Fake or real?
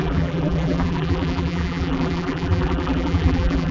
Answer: fake